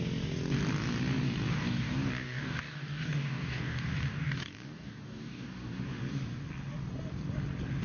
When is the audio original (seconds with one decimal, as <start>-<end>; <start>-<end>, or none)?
0.0-1.5; 5.8-7.8